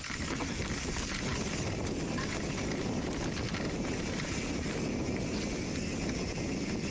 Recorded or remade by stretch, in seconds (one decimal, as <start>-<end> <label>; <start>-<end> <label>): 0.0-6.9 recorded